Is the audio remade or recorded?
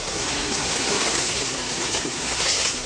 remade